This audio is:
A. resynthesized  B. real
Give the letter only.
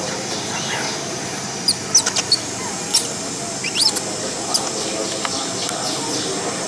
B